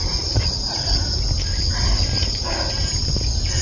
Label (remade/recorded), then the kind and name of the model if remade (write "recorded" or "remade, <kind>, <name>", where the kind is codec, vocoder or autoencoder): recorded